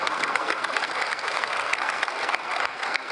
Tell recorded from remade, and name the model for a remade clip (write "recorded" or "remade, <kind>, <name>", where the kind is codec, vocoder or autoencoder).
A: remade, codec, SNAC